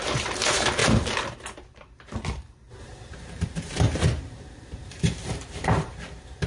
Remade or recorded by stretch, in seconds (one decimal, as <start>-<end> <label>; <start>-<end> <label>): 0.0-6.5 remade